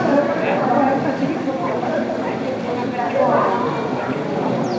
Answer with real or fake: real